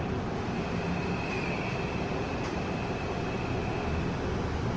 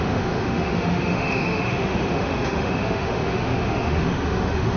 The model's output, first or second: second